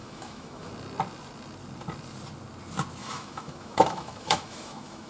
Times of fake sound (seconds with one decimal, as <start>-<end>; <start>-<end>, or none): 0.0-0.7; 3.0-5.1